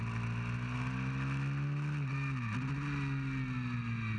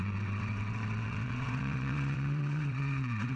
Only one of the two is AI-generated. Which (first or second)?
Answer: second